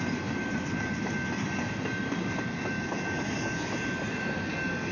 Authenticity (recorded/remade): recorded